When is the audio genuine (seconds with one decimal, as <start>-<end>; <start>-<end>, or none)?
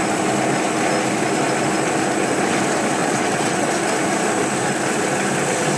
0.0-3.0; 3.7-5.8